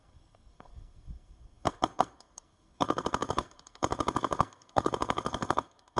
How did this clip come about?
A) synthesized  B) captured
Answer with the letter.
A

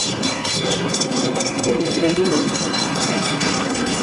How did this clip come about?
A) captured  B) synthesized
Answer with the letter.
B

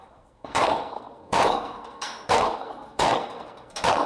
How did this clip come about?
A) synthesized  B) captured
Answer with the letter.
A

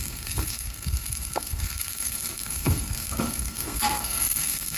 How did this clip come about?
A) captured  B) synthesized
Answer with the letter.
B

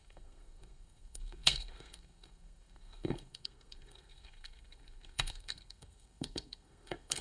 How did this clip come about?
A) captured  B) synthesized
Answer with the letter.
B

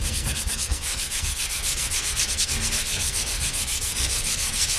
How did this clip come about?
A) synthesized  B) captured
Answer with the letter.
A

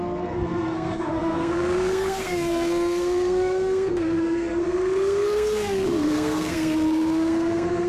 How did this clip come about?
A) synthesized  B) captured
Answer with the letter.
A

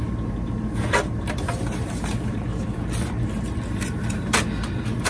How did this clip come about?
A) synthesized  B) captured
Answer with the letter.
B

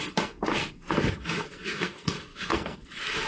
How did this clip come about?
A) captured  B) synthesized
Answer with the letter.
B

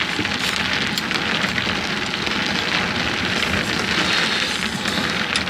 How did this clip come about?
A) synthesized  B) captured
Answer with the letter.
B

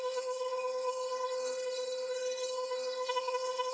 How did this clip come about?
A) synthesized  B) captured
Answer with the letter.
A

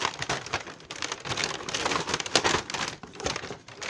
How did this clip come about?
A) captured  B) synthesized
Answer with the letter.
A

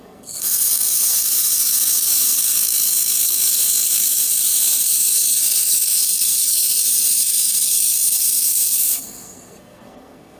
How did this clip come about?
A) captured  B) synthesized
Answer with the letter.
B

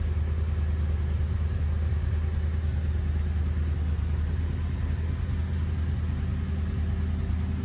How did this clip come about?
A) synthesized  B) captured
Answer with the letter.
B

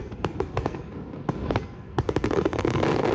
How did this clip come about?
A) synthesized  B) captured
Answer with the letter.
A